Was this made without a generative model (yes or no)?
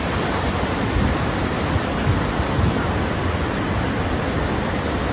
yes